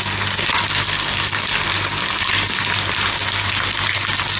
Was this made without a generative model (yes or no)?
yes